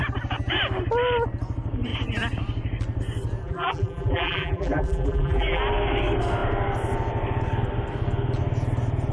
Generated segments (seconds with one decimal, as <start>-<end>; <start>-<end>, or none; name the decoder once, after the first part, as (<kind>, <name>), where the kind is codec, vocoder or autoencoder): 3.4-5.6 (vocoder, BigVGAN v2)